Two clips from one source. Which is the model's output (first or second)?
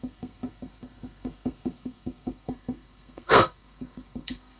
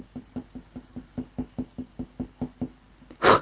first